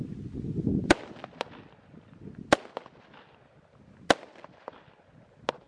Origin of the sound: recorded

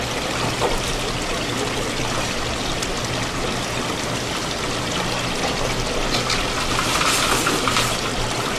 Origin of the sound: recorded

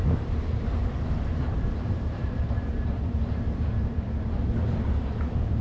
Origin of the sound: remade